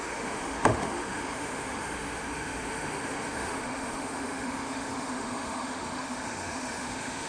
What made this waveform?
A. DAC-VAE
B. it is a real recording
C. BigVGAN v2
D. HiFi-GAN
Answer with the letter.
A